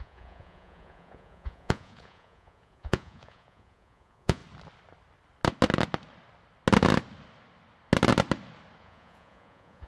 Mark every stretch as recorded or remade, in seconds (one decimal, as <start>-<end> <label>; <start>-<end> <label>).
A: 0.0-4.4 remade; 4.4-8.8 recorded; 8.8-9.9 remade